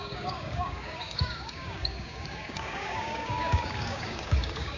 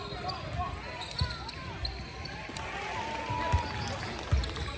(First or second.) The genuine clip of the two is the second